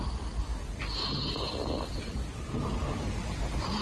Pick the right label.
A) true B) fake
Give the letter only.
A